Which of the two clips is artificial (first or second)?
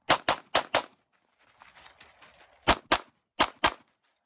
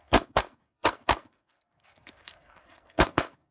second